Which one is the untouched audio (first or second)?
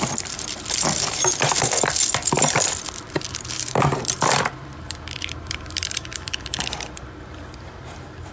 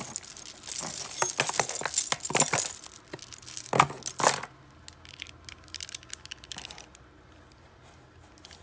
second